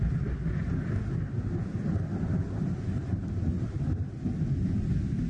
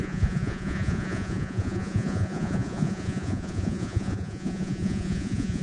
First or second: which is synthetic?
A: second